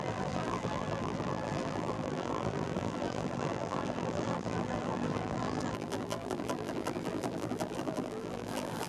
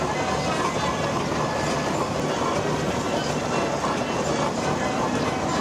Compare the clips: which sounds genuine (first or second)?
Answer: second